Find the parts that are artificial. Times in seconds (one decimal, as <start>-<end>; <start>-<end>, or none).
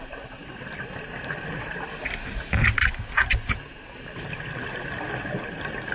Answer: none